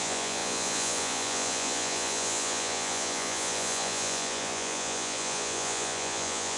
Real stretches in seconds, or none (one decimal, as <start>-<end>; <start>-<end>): none